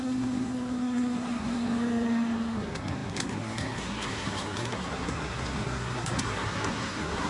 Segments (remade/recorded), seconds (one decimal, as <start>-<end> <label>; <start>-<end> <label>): 0.0-7.3 remade